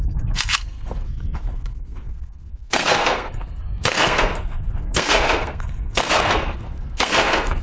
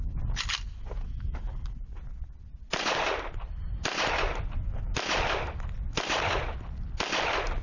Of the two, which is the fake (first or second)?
first